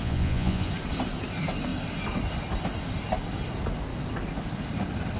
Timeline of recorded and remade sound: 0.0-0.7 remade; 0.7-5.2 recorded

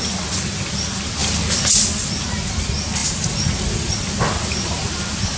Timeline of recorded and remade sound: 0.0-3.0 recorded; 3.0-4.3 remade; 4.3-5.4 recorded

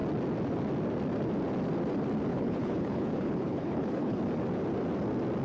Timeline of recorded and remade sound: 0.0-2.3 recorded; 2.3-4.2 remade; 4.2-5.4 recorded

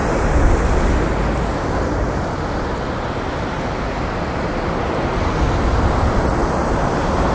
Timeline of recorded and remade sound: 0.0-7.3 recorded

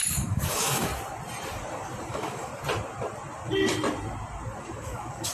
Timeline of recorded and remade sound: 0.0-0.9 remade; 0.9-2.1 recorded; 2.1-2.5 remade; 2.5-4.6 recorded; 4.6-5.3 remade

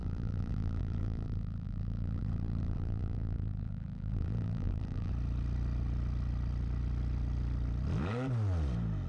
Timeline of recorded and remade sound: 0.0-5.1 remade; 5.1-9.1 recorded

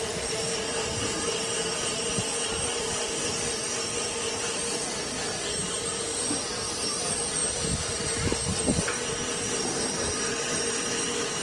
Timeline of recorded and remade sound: 0.0-11.4 recorded

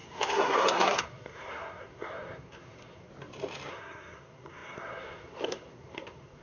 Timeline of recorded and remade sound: 0.0-3.1 remade; 3.1-3.7 recorded; 3.7-6.4 remade